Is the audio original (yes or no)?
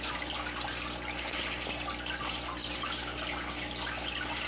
yes